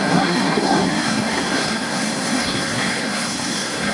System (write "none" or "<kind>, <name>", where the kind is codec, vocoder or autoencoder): codec, SNAC